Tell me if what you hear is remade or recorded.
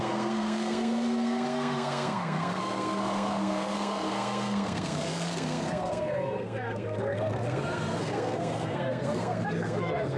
remade